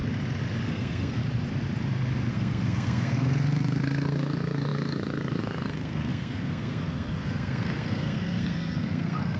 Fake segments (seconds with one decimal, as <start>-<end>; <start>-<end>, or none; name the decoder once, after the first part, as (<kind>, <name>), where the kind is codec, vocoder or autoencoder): 0.7-1.2 (codec, SNAC); 2.3-9.4